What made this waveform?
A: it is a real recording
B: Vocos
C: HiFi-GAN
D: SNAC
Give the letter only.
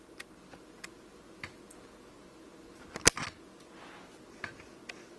A